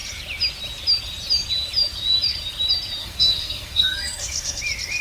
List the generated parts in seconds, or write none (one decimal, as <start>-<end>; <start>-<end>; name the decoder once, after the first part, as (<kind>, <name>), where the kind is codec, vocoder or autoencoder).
3.0-4.6 (codec, SNAC)